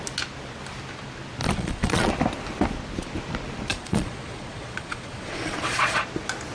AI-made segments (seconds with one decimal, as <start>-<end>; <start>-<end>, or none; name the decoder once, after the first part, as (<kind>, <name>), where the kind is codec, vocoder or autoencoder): 1.4-2.1 (vocoder, Vocos); 3.7-6.0